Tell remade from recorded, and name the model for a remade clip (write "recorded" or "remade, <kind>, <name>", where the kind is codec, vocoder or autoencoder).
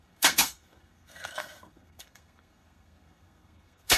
remade, codec, SNAC